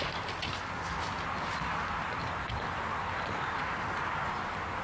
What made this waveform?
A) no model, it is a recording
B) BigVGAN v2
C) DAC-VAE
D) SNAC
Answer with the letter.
A